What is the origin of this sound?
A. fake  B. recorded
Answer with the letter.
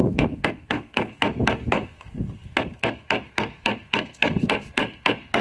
A